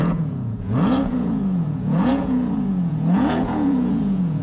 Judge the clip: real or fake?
fake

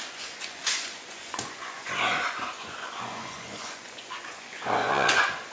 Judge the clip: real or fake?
fake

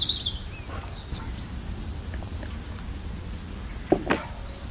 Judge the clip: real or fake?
real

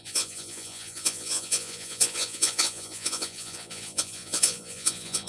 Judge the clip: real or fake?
fake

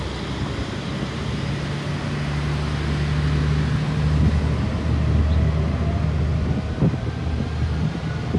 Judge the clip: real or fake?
real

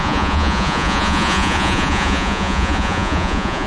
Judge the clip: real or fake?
fake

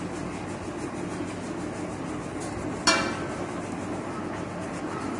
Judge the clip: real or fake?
real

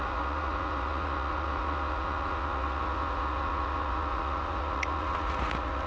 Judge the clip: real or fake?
fake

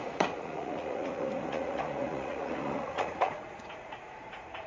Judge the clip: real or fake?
fake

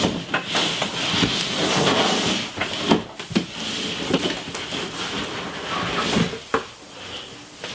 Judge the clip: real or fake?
real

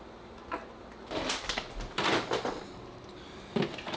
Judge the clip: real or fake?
real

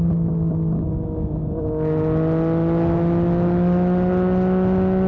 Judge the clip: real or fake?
real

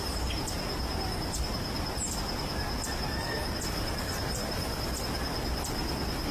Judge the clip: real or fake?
real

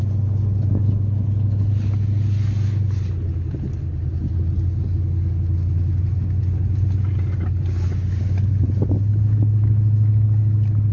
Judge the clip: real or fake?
real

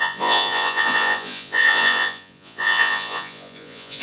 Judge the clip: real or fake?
fake